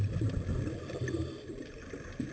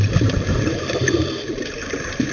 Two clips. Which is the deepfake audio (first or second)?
second